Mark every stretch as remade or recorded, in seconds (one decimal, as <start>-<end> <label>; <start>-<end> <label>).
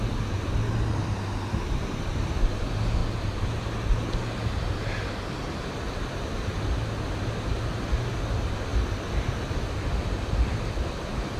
0.0-11.4 recorded